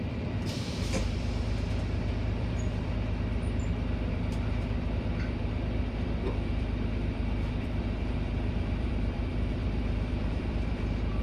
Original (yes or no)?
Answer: no